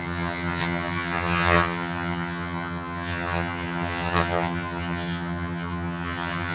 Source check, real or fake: fake